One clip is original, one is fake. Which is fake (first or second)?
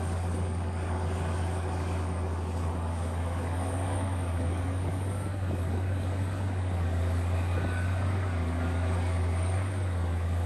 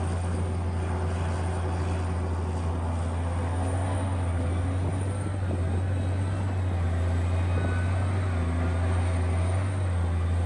first